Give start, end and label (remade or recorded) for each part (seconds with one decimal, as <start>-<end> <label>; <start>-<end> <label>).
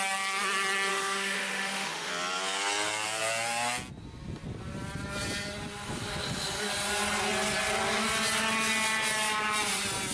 0.0-0.9 recorded; 0.9-2.1 remade; 2.1-10.1 recorded